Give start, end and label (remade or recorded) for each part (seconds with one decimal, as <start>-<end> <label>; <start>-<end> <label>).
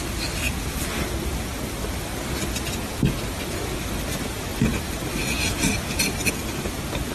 0.0-0.5 recorded; 0.5-1.5 remade; 1.5-4.5 recorded; 4.5-6.2 remade; 6.2-7.1 recorded